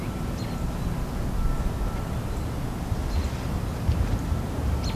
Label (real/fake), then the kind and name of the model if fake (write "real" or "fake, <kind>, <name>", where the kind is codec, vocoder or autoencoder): real